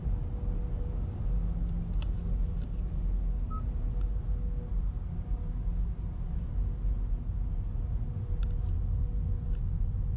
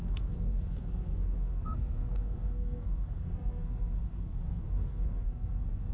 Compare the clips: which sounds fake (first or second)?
second